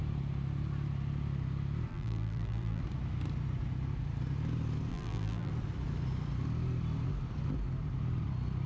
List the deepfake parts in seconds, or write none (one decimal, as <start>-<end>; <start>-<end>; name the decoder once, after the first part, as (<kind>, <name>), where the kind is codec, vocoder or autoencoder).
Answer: 1.9-2.8 (vocoder, BigVGAN v2); 4.9-5.5

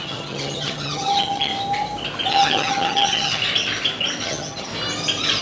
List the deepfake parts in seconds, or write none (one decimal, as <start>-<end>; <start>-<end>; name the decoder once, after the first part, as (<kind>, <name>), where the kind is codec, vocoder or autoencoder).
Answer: 0.0-1.5 (vocoder, HiFi-GAN); 2.3-3.4; 4.2-4.7

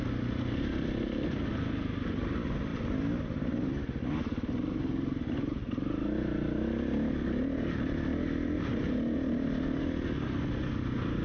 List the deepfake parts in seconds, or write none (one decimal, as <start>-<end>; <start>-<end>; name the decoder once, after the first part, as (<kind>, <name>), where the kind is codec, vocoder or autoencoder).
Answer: none

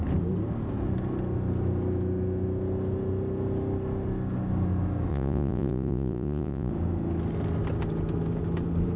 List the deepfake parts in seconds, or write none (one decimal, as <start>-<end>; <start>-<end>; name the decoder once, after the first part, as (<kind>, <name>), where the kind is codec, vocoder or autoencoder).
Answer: 5.1-6.7 (vocoder, Vocos)

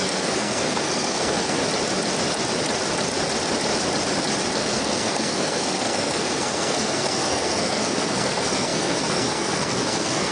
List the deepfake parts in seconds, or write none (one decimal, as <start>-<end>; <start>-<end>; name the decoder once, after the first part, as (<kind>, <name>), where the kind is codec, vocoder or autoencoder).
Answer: 0.0-1.6 (codec, SNAC); 4.5-10.3

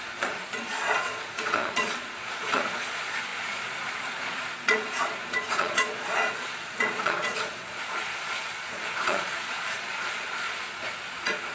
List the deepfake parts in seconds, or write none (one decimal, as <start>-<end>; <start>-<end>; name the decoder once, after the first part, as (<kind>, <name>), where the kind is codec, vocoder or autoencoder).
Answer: 0.0-11.5 (vocoder, Vocos)

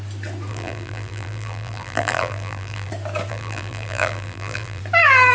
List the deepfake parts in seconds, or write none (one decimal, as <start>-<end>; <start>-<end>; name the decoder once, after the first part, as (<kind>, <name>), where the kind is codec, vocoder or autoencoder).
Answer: 0.5-2.9 (vocoder, BigVGAN v2); 3.3-4.8